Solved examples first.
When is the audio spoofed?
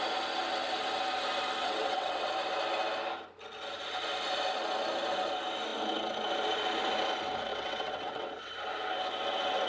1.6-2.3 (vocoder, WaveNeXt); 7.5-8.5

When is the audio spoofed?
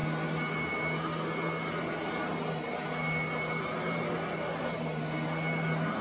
none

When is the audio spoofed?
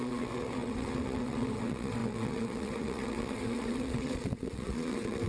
0.0-5.3 (vocoder, WaveNeXt)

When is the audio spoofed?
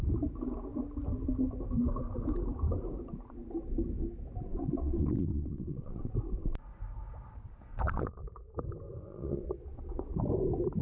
4.5-6.1 (vocoder, WaveNeXt); 7.7-8.2; 9.0-10.1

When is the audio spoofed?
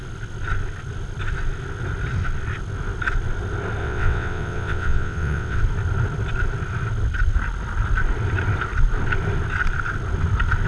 3.8-5.6 (vocoder, WaveNeXt)